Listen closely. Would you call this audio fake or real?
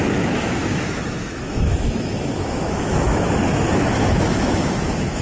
fake